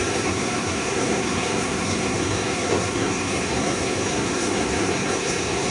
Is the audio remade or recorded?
remade